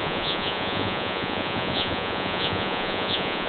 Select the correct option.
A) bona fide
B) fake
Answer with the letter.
B